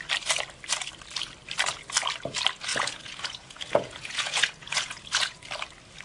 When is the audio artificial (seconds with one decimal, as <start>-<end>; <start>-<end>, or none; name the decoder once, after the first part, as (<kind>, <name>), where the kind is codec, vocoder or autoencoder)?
2.7-5.4 (vocoder, Vocos)